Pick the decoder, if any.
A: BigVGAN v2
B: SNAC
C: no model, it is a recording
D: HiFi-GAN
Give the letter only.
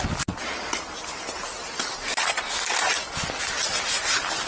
C